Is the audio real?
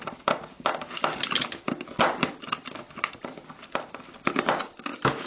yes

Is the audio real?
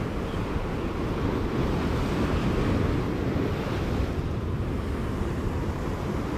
yes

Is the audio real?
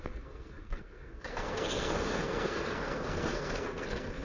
no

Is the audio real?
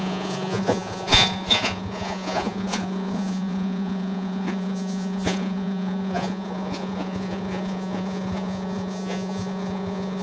no